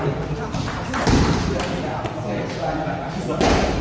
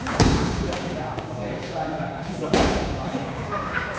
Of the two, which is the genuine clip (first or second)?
first